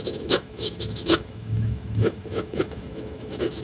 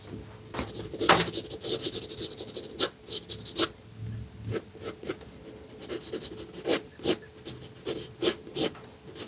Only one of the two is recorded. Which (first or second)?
second